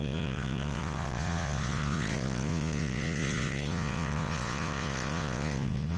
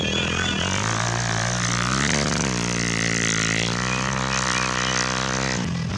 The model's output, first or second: first